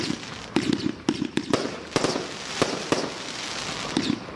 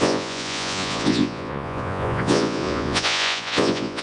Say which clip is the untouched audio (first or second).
first